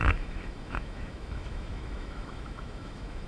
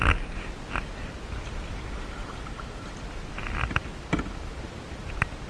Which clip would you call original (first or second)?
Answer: second